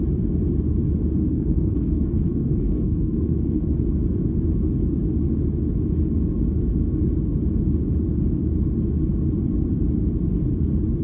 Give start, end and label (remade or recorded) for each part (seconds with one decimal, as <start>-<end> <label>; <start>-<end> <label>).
0.0-1.3 recorded; 1.3-3.7 remade; 3.7-11.0 recorded